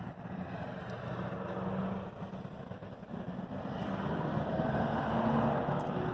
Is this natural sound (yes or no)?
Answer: yes